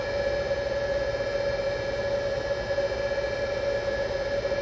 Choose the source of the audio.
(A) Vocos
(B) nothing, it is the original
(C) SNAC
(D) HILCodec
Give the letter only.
B